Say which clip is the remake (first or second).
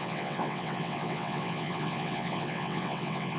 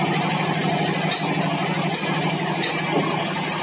first